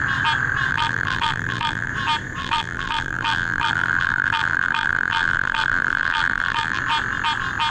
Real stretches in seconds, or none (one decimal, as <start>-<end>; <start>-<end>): 0.0-0.7; 1.9-2.4; 6.8-7.7